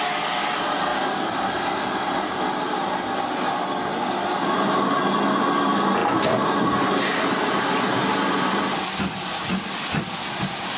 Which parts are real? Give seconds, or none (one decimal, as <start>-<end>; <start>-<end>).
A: 0.0-10.8